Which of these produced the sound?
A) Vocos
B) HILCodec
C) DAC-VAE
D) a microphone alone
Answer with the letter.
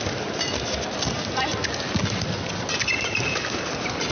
D